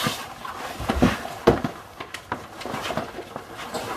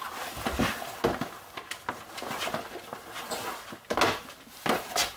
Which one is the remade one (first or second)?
first